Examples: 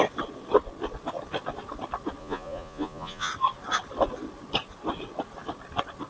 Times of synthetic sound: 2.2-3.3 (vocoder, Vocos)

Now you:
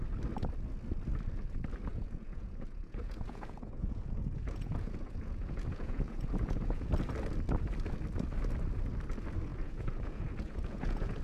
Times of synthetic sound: 1.9-6.9 (vocoder, Vocos); 9.5-11.2

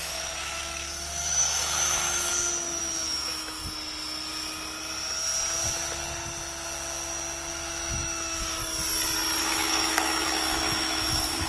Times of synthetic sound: 0.0-2.3 (autoencoder, DAC-VAE); 2.8-3.6; 7.5-8.6; 9.4-11.5

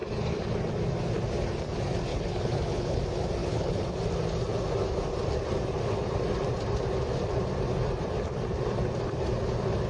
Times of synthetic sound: 2.1-3.0 (codec, HILCodec); 3.4-4.0

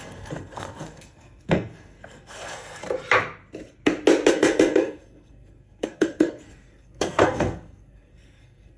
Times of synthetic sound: 0.0-2.8 (codec, SNAC); 4.3-8.8

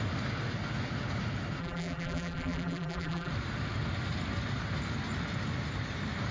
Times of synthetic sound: 1.6-3.3 (vocoder, BigVGAN v2)